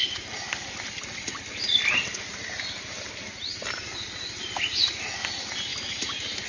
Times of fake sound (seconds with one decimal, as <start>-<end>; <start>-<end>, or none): none